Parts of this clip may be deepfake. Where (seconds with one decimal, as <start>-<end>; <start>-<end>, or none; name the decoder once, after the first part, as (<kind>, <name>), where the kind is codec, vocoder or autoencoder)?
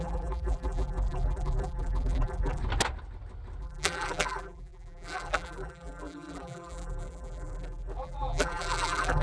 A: 0.0-2.6 (vocoder, BigVGAN v2); 3.6-9.2